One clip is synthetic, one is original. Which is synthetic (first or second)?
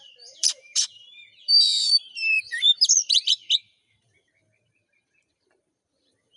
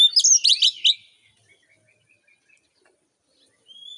first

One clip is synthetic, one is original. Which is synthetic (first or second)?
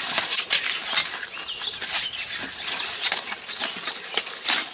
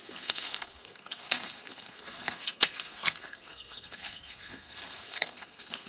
second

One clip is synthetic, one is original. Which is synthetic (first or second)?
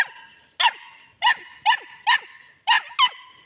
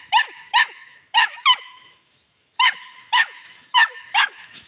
second